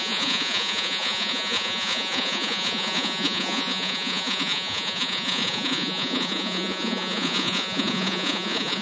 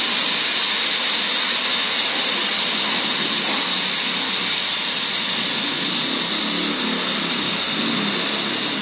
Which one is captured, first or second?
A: second